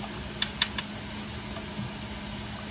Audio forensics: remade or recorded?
recorded